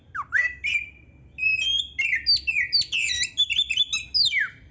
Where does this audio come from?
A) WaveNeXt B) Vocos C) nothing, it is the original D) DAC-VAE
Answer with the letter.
C